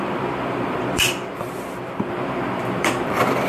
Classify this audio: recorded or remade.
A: remade